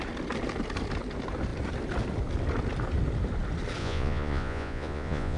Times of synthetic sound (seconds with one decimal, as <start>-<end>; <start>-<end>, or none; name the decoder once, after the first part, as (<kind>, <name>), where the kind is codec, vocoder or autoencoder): 3.8-5.4 (vocoder, Vocos)